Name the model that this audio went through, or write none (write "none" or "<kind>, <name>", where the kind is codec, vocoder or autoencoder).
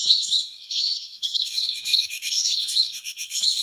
codec, DAC